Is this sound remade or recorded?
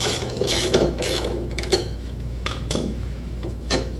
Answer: remade